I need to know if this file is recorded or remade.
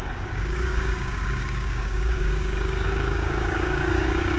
remade